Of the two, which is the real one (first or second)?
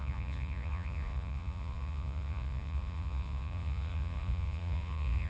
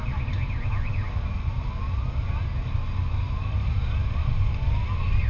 second